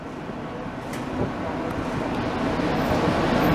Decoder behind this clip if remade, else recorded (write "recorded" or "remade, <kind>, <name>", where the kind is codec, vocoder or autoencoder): recorded